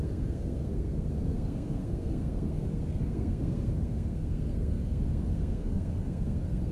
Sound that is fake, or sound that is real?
fake